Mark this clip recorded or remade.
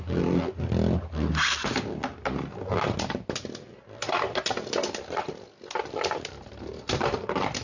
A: recorded